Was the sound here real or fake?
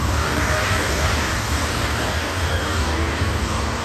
fake